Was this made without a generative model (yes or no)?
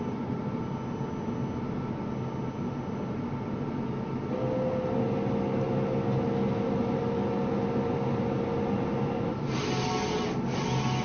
yes